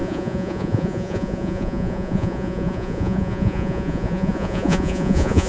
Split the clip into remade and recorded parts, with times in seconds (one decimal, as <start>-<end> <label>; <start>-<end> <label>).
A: 0.0-5.5 remade